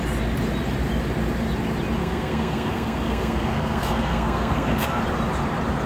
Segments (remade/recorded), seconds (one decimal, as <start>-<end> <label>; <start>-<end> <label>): 0.0-2.0 recorded; 2.0-5.0 remade; 5.0-5.9 recorded